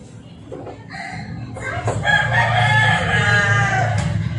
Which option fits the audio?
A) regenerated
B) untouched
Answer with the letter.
B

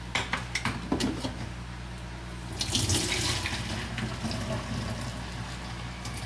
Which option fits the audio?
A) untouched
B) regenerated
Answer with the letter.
A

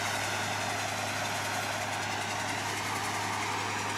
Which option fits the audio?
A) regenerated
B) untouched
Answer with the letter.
B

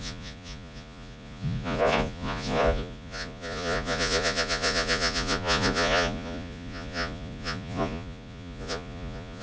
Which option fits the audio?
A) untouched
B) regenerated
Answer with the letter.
B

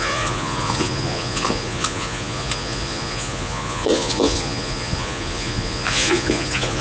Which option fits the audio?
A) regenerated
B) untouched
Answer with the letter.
A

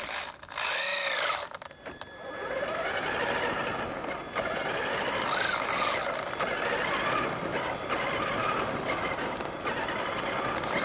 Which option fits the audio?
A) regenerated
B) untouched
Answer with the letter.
B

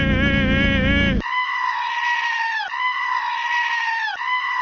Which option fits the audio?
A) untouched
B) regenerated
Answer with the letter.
A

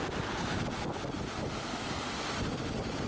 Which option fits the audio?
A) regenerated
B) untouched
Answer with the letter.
B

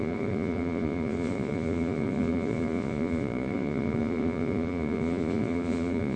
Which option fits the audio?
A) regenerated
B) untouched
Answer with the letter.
A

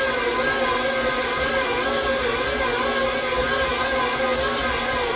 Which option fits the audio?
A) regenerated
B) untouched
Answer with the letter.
B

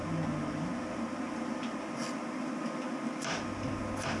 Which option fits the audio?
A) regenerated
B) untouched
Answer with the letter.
B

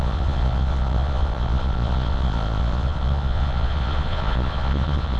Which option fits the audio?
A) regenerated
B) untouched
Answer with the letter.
A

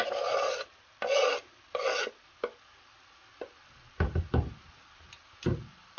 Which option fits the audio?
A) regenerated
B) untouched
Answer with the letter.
B